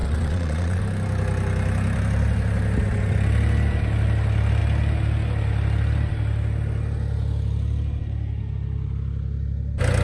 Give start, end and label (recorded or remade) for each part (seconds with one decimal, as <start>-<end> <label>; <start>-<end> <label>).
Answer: 0.0-0.8 remade; 0.8-10.0 recorded